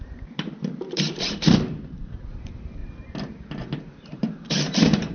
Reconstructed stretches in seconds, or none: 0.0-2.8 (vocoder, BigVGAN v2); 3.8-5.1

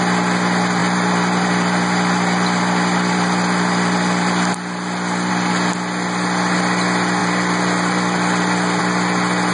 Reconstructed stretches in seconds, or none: 0.8-5.3 (vocoder, BigVGAN v2); 7.2-8.8

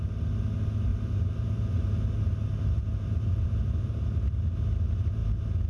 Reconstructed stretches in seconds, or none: 0.9-1.9 (vocoder, BigVGAN v2); 2.8-3.9